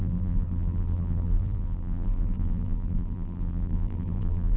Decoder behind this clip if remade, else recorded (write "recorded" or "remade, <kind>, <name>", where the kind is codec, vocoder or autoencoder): remade, vocoder, BigVGAN v2